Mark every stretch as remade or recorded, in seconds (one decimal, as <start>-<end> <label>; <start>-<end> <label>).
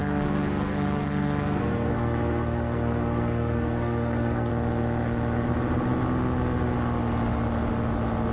0.0-4.5 remade; 4.5-8.3 recorded